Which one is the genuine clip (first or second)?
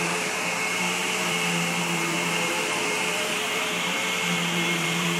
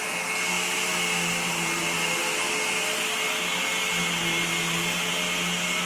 second